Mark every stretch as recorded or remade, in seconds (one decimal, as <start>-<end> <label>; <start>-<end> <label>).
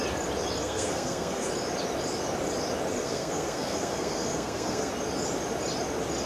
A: 0.0-0.6 recorded; 0.6-1.5 remade; 1.5-2.9 recorded; 2.9-4.9 remade; 4.9-6.3 recorded